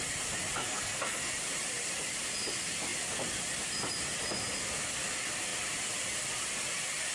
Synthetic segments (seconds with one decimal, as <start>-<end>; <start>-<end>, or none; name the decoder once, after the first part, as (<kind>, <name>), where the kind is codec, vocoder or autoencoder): 0.6-1.3 (codec, SNAC)